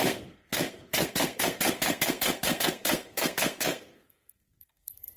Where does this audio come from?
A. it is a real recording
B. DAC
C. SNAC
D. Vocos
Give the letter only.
C